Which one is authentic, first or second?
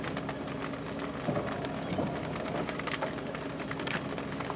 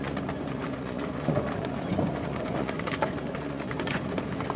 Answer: first